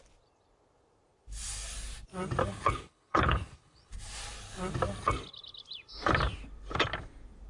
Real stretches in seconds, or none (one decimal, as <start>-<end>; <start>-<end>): 0.0-2.4; 3.9-7.5